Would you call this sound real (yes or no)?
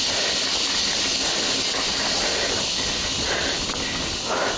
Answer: yes